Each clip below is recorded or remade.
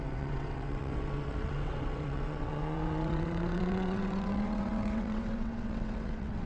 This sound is remade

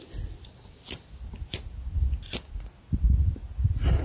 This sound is recorded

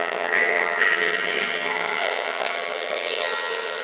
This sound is remade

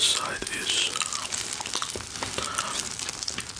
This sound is recorded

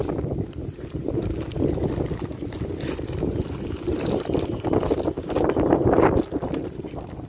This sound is recorded